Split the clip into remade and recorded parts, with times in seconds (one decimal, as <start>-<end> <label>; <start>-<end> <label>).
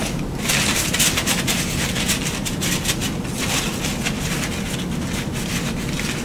0.0-6.2 recorded